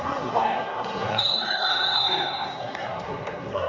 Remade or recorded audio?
remade